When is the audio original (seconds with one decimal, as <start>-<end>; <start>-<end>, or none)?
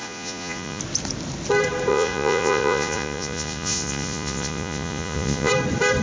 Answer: 0.8-1.9; 5.5-6.0